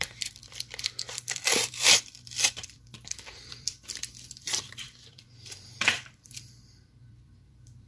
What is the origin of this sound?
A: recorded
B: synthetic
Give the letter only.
B